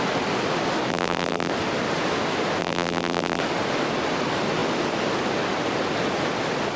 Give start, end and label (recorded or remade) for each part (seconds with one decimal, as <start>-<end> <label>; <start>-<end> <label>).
0.0-0.9 recorded; 0.9-1.5 remade; 1.5-2.6 recorded; 2.6-3.4 remade; 3.4-6.8 recorded